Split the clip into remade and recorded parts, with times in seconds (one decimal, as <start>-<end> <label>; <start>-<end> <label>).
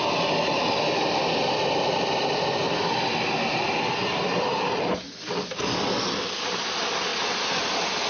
0.0-8.1 recorded